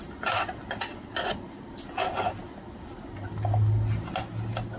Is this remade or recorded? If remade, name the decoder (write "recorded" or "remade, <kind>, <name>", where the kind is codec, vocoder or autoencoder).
recorded